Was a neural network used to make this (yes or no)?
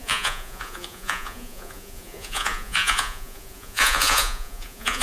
yes